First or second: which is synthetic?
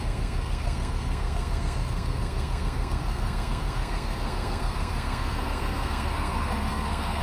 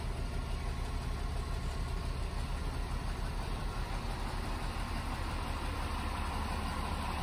first